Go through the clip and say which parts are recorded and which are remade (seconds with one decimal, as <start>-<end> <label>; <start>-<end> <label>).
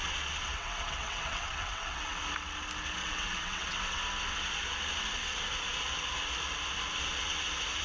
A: 0.0-0.4 recorded; 0.4-2.2 remade; 2.2-3.0 recorded; 3.0-4.0 remade; 4.0-7.8 recorded